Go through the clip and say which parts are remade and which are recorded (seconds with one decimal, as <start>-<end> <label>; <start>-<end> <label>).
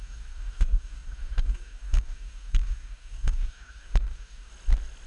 0.0-4.5 remade; 4.5-5.1 recorded